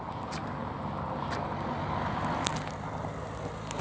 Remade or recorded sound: recorded